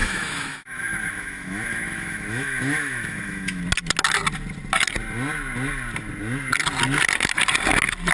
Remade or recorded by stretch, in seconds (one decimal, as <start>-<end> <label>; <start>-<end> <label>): 0.0-3.6 remade; 3.6-8.1 recorded